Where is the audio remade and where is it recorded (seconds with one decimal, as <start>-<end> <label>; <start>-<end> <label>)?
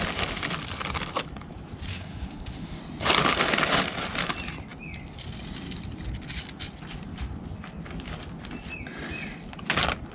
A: 0.0-1.9 recorded; 1.9-2.8 remade; 2.8-10.1 recorded